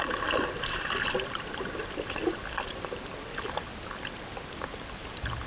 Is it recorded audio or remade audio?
recorded